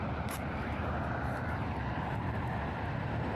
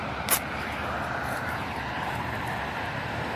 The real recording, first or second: second